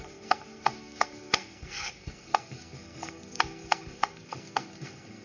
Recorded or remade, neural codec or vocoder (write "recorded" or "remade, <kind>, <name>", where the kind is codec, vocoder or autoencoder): remade, codec, SNAC